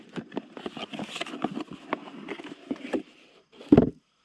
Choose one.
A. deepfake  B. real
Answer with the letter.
B